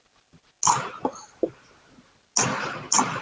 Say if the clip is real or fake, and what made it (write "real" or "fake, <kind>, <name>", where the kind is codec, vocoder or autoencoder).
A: real